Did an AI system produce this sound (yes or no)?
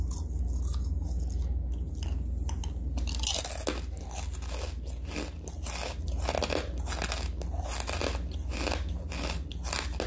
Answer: no